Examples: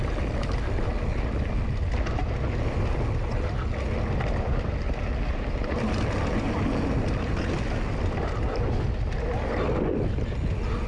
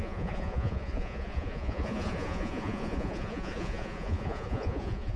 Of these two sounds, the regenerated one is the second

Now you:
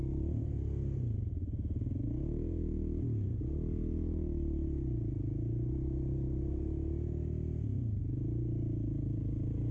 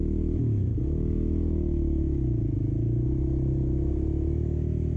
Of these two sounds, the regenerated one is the second